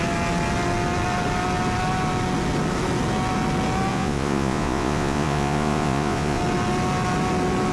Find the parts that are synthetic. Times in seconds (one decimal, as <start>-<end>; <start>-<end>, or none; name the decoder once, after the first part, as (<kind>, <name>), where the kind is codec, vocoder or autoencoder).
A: 3.9-6.4 (vocoder, Vocos)